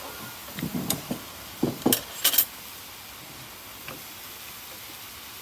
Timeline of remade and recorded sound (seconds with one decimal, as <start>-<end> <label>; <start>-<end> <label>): 0.0-0.4 recorded; 0.4-1.0 remade; 1.0-5.4 recorded